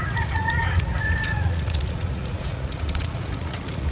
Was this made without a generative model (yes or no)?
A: no